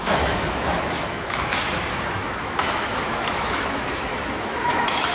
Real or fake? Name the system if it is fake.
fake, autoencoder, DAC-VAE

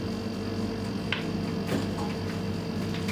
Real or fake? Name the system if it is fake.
real